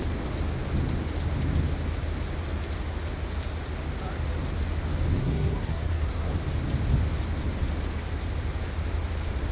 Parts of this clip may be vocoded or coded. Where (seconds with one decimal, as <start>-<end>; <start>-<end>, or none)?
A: 5.2-6.3

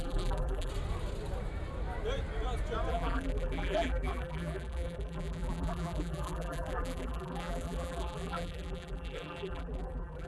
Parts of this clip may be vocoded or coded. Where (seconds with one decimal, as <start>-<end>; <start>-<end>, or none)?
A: 0.0-0.7; 2.9-10.3

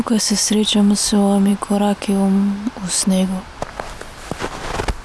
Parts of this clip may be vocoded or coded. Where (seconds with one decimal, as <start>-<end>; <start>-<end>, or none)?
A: none

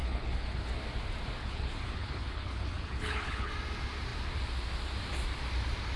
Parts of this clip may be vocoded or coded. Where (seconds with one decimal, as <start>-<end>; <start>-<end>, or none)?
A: 0.0-0.7; 1.4-3.5

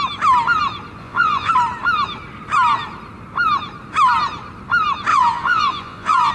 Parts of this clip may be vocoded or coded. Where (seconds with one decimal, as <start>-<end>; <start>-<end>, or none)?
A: 1.0-1.5; 5.1-6.3

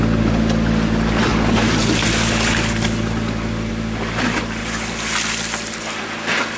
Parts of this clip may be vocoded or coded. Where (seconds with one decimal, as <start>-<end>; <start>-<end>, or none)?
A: none

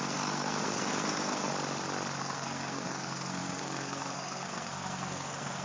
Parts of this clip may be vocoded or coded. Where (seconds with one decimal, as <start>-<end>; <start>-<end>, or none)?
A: 0.0-1.5; 2.2-5.6

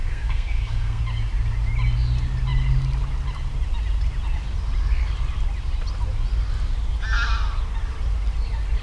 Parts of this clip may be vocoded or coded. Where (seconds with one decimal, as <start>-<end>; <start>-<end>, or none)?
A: 0.0-1.0